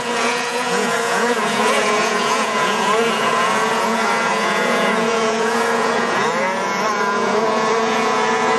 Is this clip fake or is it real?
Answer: fake